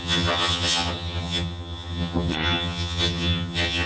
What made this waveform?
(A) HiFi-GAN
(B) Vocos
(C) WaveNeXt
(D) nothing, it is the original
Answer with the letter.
A